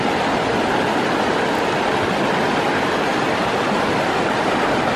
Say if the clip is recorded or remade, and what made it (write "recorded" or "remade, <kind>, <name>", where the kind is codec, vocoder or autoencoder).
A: recorded